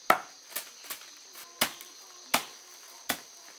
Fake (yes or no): no